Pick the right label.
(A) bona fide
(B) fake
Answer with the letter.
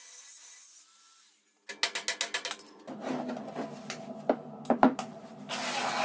A